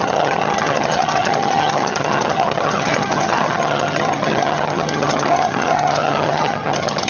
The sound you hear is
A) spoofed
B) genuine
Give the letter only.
A